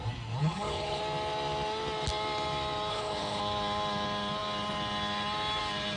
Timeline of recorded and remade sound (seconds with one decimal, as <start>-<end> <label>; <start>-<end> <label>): 0.0-0.4 recorded; 0.4-1.0 remade; 1.0-2.9 recorded; 2.9-3.4 remade; 3.4-6.0 recorded